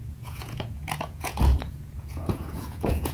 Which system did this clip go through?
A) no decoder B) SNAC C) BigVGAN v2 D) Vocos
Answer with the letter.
D